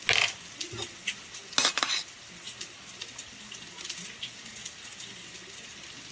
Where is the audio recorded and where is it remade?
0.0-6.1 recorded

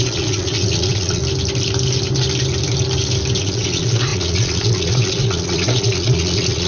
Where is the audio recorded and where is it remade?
0.0-1.2 remade; 1.2-3.4 recorded; 3.4-6.7 remade

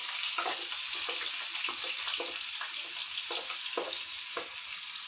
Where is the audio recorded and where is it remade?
0.0-1.9 remade; 1.9-5.1 recorded

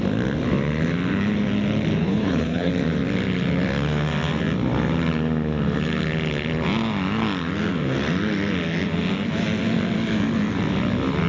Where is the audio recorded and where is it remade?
0.0-2.0 recorded; 2.0-2.7 remade; 2.7-11.3 recorded

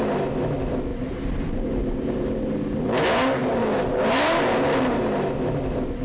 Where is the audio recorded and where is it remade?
0.0-0.9 recorded; 0.9-2.5 remade; 2.5-6.0 recorded